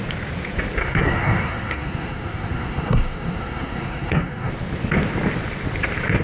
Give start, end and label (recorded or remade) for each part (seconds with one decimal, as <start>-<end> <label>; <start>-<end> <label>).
0.0-0.8 recorded; 0.8-4.5 remade; 4.5-6.2 recorded